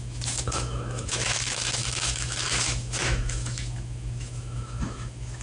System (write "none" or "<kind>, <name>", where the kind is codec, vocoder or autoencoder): autoencoder, DAC-VAE